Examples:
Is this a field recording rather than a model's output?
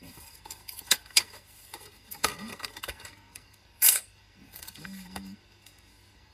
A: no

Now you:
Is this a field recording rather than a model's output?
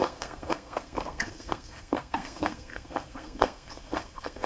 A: no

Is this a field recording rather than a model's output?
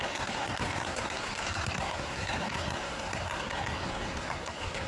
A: no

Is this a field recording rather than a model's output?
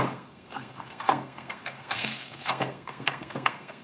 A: no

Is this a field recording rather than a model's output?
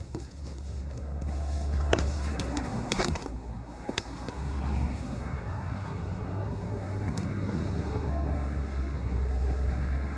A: no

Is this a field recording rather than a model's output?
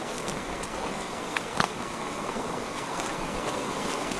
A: no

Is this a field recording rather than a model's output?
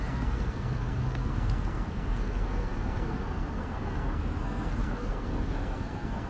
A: no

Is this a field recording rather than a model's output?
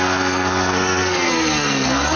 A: no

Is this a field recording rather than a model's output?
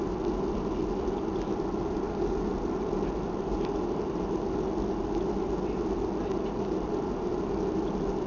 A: yes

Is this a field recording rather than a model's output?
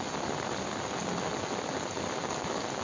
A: yes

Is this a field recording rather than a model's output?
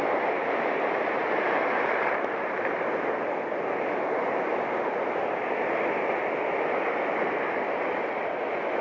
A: yes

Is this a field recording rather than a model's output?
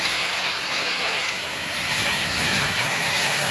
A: no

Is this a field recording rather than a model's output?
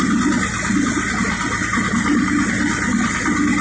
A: yes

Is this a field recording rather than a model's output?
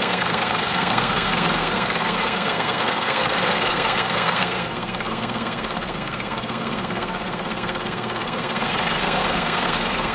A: no